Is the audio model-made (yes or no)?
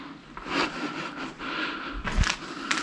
no